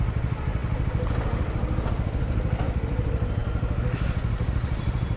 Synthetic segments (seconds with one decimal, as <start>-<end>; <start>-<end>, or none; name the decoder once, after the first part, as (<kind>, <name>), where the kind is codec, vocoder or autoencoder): 0.0-0.6 (vocoder, BigVGAN v2); 1.9-3.4; 4.5-5.2